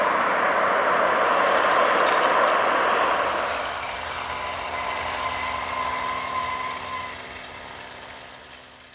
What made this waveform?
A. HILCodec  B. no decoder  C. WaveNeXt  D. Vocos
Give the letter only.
B